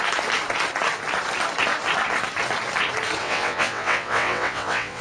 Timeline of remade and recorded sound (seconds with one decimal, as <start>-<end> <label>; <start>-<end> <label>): 0.0-3.2 recorded; 3.2-5.0 remade